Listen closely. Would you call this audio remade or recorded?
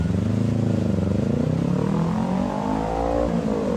recorded